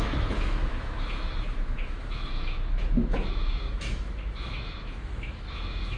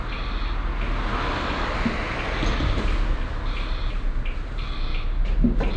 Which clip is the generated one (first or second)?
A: first